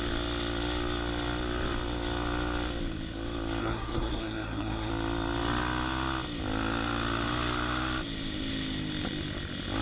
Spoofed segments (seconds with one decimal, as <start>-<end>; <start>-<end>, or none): 3.6-4.9